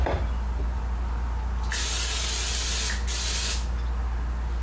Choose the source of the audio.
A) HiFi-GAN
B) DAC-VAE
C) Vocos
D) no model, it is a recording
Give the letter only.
D